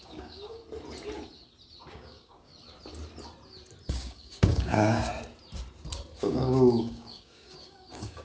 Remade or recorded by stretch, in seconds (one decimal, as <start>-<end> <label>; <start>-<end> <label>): 0.0-0.6 remade; 0.6-1.9 recorded; 1.9-2.5 remade; 2.5-3.9 recorded; 3.9-5.1 remade; 5.1-6.2 recorded; 6.2-8.2 remade